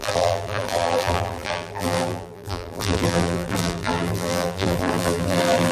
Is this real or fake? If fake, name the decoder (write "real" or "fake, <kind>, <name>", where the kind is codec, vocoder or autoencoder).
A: fake, vocoder, BigVGAN v2